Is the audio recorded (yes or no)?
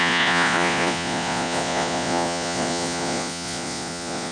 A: no